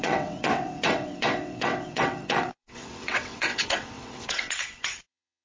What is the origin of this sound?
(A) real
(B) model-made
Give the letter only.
B